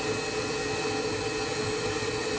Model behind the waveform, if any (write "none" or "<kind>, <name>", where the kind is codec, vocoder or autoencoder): none